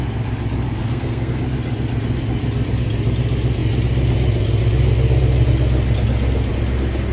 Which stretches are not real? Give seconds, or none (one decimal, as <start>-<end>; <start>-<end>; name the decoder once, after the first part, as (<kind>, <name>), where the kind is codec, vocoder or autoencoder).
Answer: 0.8-1.4 (codec, SNAC)